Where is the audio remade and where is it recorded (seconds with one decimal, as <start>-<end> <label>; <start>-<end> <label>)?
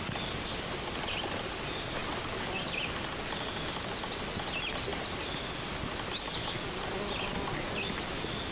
0.0-8.5 recorded